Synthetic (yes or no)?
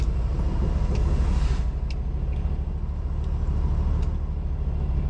no